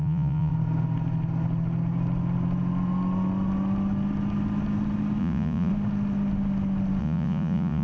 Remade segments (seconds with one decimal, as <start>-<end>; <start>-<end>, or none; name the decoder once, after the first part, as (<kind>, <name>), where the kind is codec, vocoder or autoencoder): 0.0-0.5 (vocoder, Vocos); 5.2-5.7; 7.0-7.8